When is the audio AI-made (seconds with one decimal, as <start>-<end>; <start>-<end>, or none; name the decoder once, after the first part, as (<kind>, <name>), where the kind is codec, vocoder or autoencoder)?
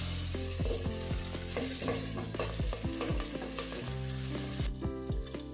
none